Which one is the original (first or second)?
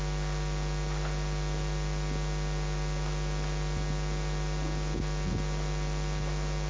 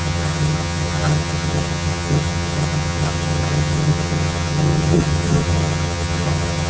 first